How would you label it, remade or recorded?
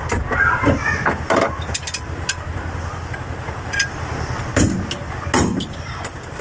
recorded